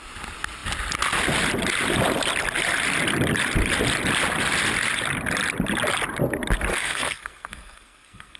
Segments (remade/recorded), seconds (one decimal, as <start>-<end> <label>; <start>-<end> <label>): 0.0-6.7 recorded; 6.7-8.4 remade